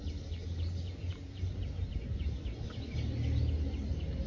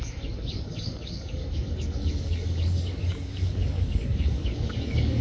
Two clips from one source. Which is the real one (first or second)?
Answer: first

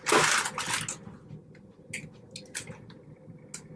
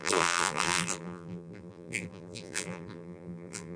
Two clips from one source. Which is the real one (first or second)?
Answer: first